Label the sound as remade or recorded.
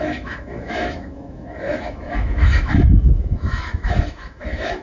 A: remade